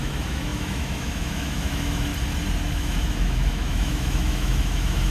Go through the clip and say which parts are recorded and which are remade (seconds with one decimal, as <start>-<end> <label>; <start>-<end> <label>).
0.0-2.1 remade; 2.1-2.7 recorded; 2.7-5.1 remade